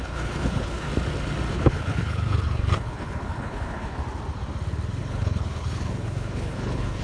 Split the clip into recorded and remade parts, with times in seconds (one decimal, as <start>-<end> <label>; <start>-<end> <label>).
0.0-0.9 remade; 0.9-1.5 recorded; 1.5-4.0 remade; 4.0-5.0 recorded; 5.0-7.0 remade